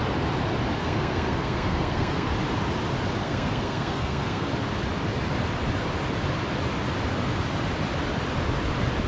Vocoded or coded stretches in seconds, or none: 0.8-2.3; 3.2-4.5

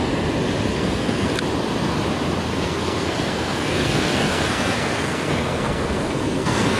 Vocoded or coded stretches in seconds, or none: 0.7-1.3; 2.5-6.8

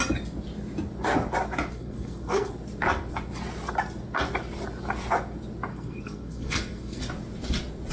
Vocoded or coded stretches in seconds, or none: 1.7-2.5; 5.7-7.0